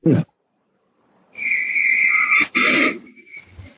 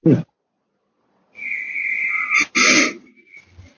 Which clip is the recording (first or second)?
second